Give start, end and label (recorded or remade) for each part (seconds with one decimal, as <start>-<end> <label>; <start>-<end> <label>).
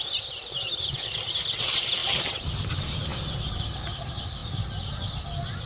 0.0-5.7 recorded